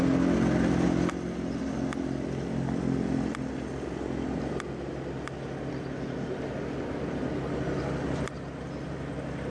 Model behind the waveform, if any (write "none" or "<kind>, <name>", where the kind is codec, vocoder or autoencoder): none